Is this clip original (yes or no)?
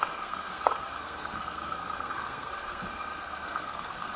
no